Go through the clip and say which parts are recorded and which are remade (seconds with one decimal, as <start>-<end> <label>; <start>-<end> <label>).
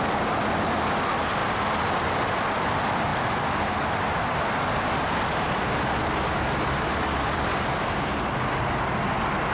0.0-9.5 recorded